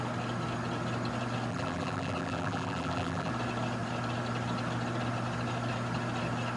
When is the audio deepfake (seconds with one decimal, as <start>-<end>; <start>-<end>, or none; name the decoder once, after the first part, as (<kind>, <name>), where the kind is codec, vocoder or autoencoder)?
1.5-3.3 (vocoder, BigVGAN v2)